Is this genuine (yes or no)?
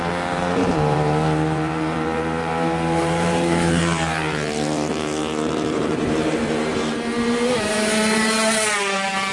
no